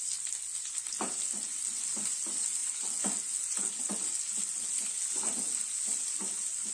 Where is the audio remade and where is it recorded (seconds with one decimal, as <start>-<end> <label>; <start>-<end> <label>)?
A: 0.0-6.7 recorded